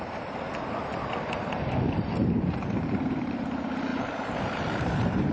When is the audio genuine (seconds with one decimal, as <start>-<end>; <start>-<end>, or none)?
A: none